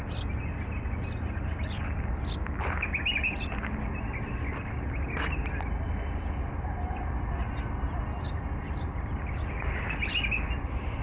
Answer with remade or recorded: recorded